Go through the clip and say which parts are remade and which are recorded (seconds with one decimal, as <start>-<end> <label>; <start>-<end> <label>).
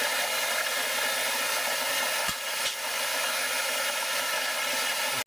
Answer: 0.0-3.1 recorded; 3.1-4.6 remade; 4.6-5.3 recorded